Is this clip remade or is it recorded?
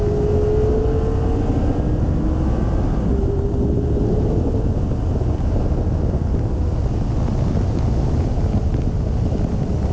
recorded